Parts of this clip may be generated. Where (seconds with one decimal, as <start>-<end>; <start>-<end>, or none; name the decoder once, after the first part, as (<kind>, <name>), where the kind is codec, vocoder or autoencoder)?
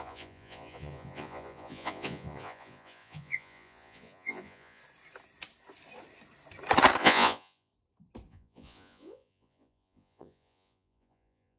0.0-4.8 (vocoder, Vocos); 7.0-7.7; 8.3-11.6